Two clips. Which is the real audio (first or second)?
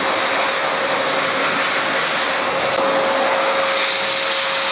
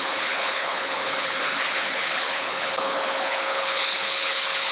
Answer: first